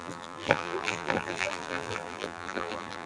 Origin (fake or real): fake